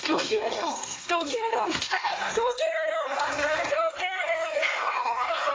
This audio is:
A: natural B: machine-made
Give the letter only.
B